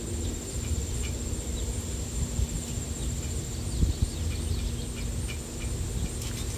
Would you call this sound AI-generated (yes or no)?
no